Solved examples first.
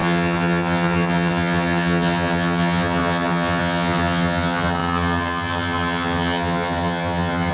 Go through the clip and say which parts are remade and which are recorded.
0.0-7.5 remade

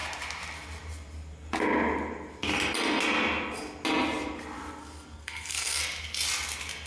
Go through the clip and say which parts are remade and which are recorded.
0.0-4.8 recorded; 4.8-5.8 remade; 5.8-6.9 recorded

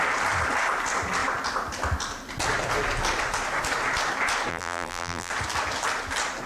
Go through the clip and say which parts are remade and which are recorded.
0.0-4.5 recorded; 4.5-5.3 remade; 5.3-6.5 recorded

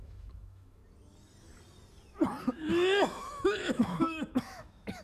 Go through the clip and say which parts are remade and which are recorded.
0.0-0.8 remade; 0.8-2.4 recorded; 2.4-5.0 remade

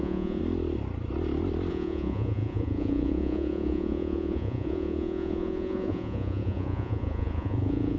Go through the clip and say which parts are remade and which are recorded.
0.0-0.4 remade; 0.4-1.7 recorded; 1.7-8.0 remade

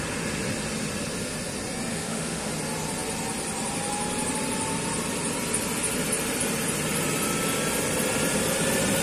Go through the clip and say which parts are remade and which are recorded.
0.0-1.9 recorded; 1.9-2.5 remade; 2.5-9.0 recorded

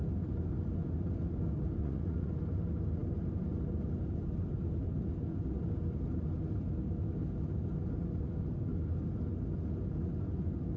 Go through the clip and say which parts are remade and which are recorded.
0.0-1.8 recorded; 1.8-2.3 remade; 2.3-10.8 recorded